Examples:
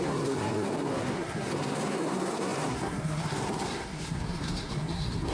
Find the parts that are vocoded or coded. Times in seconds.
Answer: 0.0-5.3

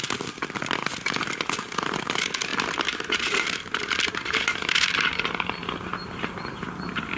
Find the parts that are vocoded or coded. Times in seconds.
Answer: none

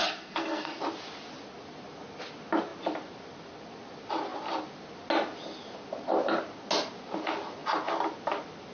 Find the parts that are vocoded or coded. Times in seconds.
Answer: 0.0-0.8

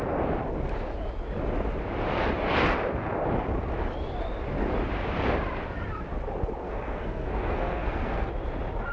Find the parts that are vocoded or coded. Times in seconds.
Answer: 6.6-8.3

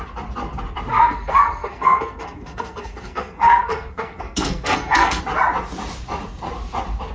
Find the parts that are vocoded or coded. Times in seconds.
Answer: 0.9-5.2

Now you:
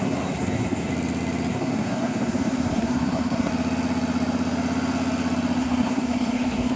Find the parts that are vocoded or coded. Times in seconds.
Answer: 0.0-0.9; 1.5-3.5; 5.6-6.8

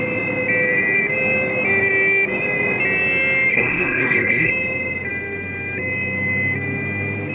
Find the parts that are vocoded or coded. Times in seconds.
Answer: 3.5-4.5

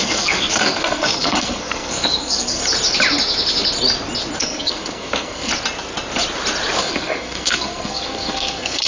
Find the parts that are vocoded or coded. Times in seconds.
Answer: 0.0-2.6; 4.4-5.5; 6.8-8.9